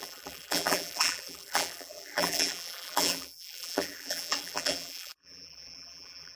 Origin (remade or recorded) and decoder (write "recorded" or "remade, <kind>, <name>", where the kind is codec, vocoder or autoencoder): remade, vocoder, BigVGAN v2